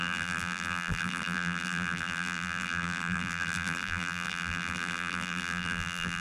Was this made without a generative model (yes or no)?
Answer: no